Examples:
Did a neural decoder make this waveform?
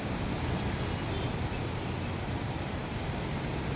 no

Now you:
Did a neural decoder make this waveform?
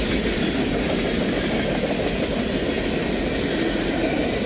no